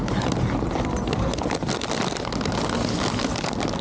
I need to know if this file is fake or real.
real